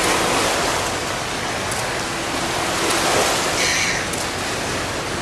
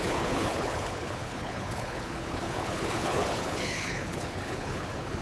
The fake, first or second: second